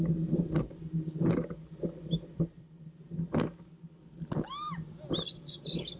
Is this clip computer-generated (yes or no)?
no